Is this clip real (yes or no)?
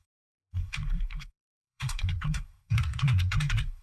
no